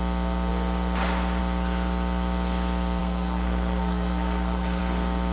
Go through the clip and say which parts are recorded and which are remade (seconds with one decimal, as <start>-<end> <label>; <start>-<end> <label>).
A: 0.0-3.0 recorded; 3.0-4.8 remade; 4.8-5.3 recorded